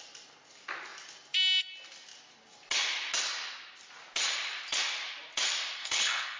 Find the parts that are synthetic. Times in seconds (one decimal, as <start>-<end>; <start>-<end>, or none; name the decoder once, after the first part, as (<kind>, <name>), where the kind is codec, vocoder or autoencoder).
5.8-6.4 (codec, HILCodec)